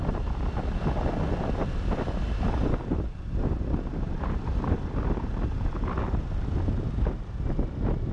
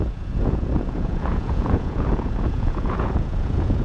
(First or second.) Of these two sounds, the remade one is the second